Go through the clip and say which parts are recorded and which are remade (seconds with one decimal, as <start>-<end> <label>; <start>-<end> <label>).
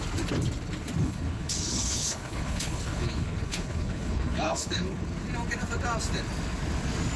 0.0-1.0 recorded; 1.0-5.0 remade; 5.0-7.2 recorded